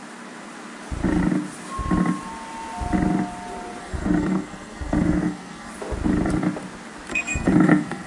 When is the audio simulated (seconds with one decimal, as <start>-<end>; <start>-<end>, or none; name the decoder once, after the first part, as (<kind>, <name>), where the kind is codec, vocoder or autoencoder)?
3.8-5.7 (codec, SNAC); 7.1-8.1